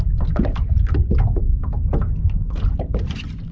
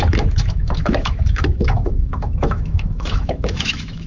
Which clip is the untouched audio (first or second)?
first